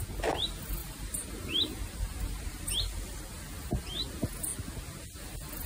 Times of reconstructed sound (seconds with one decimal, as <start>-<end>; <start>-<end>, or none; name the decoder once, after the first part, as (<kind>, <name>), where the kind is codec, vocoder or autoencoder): 0.8-2.6 (vocoder, BigVGAN v2)